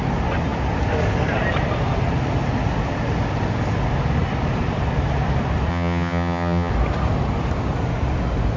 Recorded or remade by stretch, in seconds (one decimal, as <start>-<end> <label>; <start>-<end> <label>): 0.0-5.7 recorded; 5.7-6.7 remade; 6.7-8.6 recorded